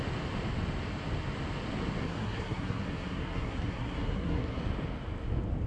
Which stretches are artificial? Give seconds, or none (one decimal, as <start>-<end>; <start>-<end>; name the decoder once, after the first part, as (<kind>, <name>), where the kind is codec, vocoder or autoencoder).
2.0-4.6 (codec, SNAC)